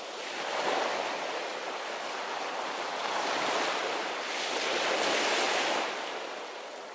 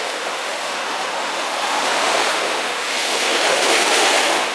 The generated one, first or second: second